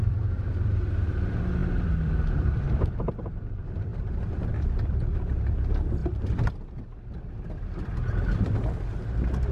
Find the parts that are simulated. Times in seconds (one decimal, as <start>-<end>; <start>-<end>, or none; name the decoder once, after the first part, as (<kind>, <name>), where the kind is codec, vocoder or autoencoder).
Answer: 0.0-0.7 (vocoder, BigVGAN v2); 1.6-3.1